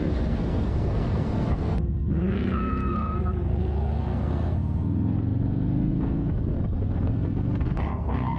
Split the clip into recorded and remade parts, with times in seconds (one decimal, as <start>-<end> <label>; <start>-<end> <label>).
0.0-8.4 remade